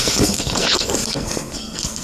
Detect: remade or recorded remade